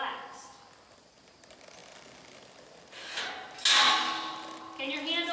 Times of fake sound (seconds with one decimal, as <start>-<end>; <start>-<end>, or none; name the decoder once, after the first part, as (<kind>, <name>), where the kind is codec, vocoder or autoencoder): none